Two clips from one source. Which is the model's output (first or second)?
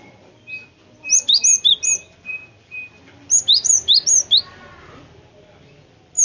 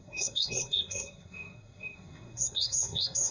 second